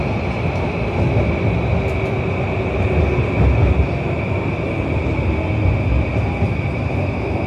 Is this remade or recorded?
recorded